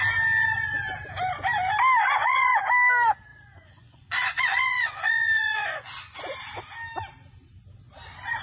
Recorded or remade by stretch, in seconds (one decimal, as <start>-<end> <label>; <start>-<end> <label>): 0.0-2.0 recorded; 2.0-2.6 remade; 2.6-3.3 recorded; 3.3-6.2 remade; 6.2-8.4 recorded